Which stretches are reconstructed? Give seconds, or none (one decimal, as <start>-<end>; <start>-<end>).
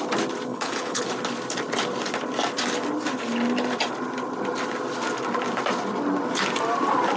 0.5-1.0